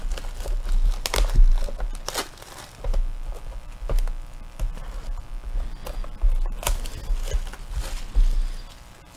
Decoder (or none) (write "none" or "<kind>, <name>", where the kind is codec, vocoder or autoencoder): none